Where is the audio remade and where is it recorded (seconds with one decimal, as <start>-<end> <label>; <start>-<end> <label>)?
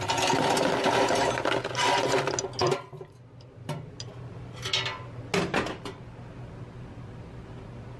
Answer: 0.0-2.6 recorded; 2.6-3.8 remade; 3.8-8.0 recorded